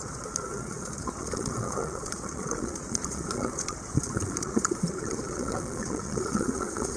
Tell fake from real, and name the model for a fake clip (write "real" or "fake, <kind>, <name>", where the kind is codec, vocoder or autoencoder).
fake, vocoder, Vocos